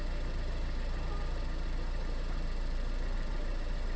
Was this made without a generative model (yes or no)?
no